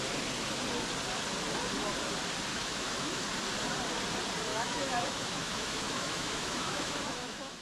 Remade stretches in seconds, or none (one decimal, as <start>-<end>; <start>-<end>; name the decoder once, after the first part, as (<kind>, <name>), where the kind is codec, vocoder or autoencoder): 2.5-3.2 (autoencoder, DAC-VAE); 4.5-7.6